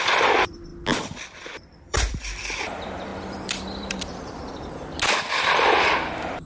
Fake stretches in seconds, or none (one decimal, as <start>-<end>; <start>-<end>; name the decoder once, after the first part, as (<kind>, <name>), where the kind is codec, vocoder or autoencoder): 0.0-0.7 (vocoder, BigVGAN v2); 1.6-4.4; 5.2-6.5